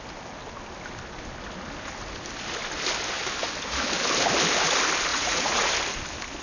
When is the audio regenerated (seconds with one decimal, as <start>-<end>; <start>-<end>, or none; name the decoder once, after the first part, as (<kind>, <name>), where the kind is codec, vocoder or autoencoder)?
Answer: 5.1-5.7 (vocoder, Vocos)